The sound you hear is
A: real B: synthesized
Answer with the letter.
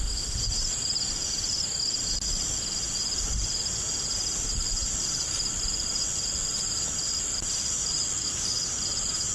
A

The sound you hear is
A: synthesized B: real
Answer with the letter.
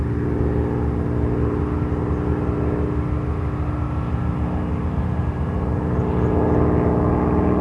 B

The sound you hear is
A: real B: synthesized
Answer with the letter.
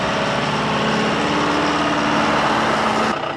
A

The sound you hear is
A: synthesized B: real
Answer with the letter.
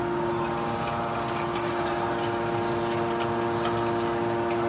B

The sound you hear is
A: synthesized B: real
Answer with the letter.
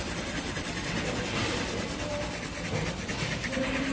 A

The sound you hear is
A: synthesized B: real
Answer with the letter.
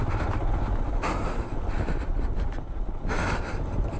B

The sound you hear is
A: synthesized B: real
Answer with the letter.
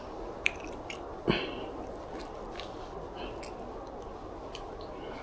B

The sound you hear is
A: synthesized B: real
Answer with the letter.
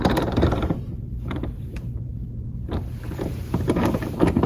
A